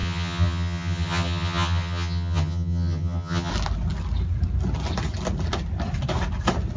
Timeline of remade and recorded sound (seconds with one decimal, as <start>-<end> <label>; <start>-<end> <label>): 0.0-3.5 remade; 3.5-6.8 recorded